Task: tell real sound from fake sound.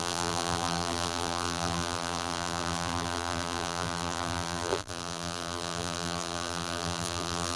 fake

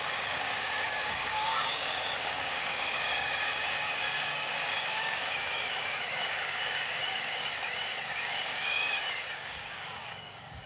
fake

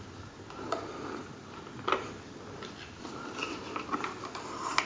real